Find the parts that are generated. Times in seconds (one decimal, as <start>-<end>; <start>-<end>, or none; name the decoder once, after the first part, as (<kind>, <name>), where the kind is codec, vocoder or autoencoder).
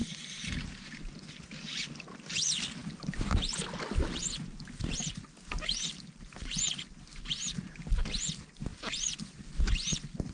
0.0-1.2 (vocoder, BigVGAN v2)